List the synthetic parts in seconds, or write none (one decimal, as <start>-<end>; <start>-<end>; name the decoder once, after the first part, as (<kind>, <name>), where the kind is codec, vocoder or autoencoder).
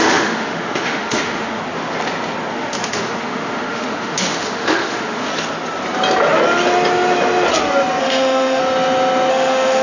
0.0-1.6 (autoencoder, DAC-VAE); 2.5-5.3; 8.0-8.6; 9.3-9.8